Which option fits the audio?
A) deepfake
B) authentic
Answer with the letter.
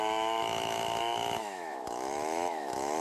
A